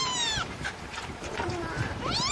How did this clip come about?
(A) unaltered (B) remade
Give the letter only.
B